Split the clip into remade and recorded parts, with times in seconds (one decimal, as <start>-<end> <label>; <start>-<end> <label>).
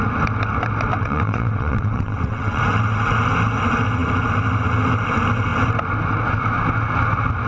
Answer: 0.0-1.0 recorded; 1.0-2.6 remade; 2.6-7.5 recorded